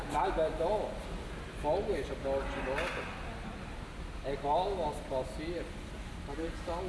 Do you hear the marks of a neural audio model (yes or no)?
no